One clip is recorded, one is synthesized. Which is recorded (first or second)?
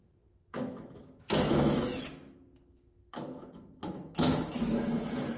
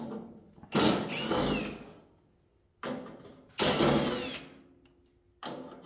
second